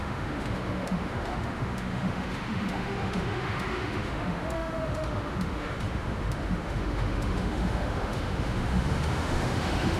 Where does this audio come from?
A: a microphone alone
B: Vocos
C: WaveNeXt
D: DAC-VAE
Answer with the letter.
D